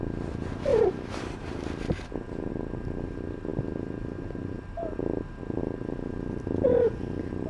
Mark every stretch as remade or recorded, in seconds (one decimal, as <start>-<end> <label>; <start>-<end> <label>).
0.0-0.7 recorded; 0.7-2.5 remade; 2.5-7.5 recorded